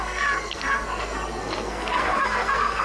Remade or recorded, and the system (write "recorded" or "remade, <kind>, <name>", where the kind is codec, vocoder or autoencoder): remade, codec, SNAC